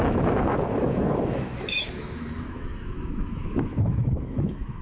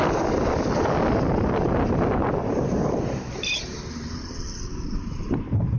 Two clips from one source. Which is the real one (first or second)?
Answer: second